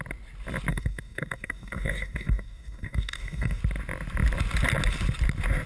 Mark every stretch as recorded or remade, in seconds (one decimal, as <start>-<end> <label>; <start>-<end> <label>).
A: 0.0-0.7 recorded; 0.7-3.6 remade; 3.6-5.7 recorded